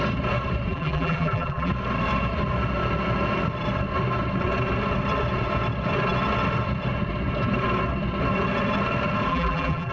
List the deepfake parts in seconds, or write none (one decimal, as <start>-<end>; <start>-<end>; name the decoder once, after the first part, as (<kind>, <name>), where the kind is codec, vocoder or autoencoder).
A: 0.7-1.7 (vocoder, BigVGAN v2); 9.3-9.9